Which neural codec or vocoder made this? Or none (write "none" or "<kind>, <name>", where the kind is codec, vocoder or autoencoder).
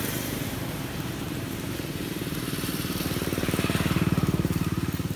vocoder, BigVGAN v2